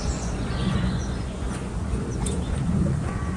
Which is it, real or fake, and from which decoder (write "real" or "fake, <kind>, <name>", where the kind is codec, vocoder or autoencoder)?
fake, vocoder, Vocos